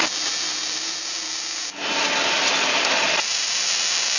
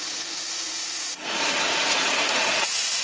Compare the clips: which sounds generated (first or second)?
second